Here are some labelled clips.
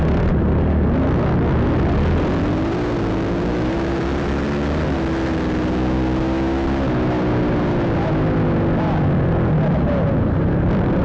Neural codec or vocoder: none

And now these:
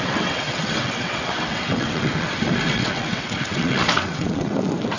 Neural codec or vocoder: vocoder, WaveNeXt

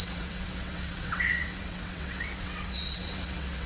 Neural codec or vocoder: vocoder, WaveNeXt